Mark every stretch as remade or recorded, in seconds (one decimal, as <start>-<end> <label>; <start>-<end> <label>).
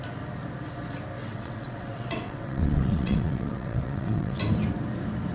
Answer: 0.0-1.2 recorded; 1.2-4.4 remade; 4.4-5.3 recorded